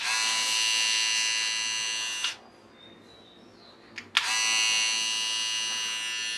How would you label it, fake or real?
real